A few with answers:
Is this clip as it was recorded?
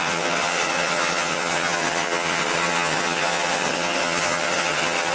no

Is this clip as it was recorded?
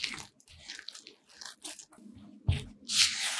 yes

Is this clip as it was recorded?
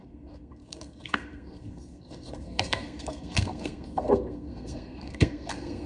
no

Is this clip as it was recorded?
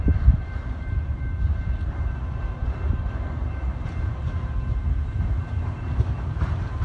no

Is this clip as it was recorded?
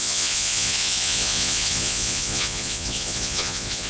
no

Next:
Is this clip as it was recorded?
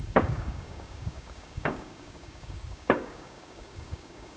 no